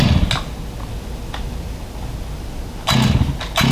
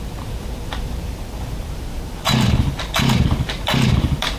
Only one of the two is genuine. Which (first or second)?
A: first